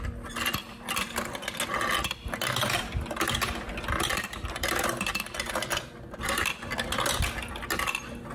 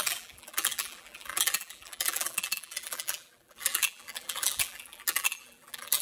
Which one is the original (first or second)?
first